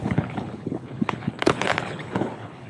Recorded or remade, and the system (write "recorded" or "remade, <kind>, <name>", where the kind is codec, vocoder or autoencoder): remade, codec, HILCodec